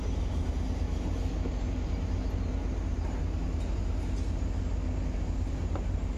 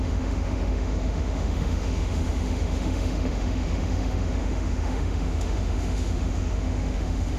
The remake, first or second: second